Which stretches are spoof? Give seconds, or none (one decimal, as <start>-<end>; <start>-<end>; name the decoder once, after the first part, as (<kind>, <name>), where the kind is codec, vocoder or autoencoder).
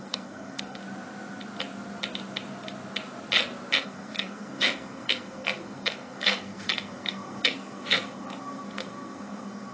0.0-0.8 (codec, SNAC); 3.8-9.7